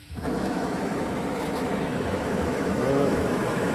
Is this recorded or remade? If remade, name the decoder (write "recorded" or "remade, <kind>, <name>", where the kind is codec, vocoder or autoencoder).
remade, autoencoder, DAC-VAE